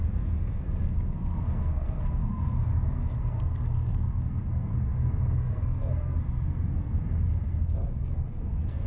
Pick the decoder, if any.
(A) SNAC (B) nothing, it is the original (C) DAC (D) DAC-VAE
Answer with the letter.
A